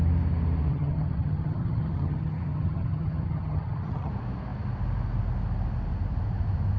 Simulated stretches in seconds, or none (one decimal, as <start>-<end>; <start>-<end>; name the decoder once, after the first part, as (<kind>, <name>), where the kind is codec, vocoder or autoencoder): 0.7-4.1 (vocoder, HiFi-GAN)